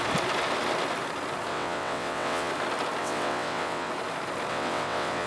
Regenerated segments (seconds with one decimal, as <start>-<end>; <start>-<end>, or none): 1.5-2.5; 3.0-3.9; 4.5-5.3